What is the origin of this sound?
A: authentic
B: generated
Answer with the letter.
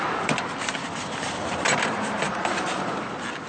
B